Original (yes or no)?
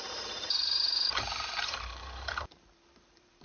no